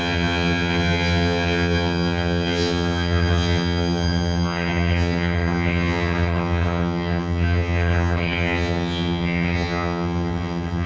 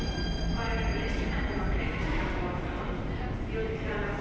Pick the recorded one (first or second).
second